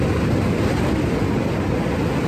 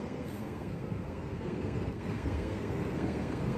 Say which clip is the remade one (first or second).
second